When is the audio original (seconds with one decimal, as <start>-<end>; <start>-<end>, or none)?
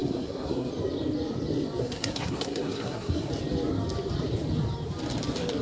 0.7-1.8; 3.3-5.6